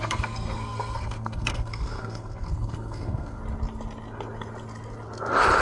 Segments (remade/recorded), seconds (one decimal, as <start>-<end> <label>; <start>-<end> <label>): 0.0-3.4 remade; 3.4-5.6 recorded